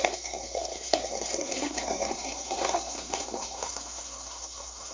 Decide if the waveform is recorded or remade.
remade